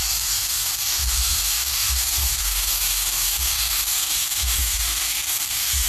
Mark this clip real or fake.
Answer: fake